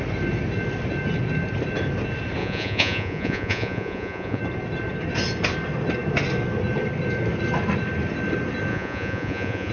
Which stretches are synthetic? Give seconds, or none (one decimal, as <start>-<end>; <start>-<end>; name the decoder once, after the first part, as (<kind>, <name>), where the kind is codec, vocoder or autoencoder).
2.4-4.4 (vocoder, Vocos); 8.7-9.7